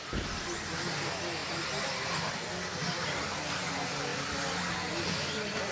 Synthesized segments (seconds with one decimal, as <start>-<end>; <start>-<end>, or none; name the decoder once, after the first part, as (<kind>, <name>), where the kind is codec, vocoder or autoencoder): none